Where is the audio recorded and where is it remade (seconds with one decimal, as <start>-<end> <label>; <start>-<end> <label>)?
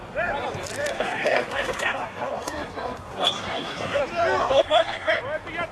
0.0-0.9 recorded; 0.9-4.0 remade; 4.0-4.4 recorded; 4.4-5.2 remade; 5.2-5.7 recorded